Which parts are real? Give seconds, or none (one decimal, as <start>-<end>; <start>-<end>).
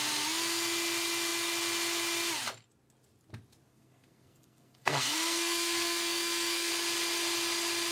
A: 0.0-3.7; 6.7-7.9